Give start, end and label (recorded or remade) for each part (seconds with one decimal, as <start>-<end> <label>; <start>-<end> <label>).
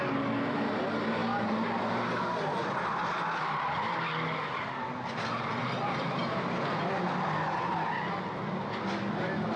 0.0-1.2 recorded; 1.2-1.9 remade; 1.9-9.6 recorded